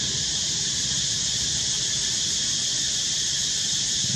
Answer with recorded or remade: remade